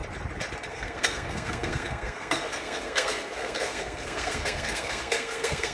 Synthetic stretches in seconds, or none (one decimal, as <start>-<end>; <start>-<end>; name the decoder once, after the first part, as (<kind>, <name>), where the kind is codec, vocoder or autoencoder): 0.7-5.7 (codec, SNAC)